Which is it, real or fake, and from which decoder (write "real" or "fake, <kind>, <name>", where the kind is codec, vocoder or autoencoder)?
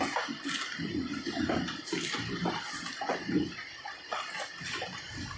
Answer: real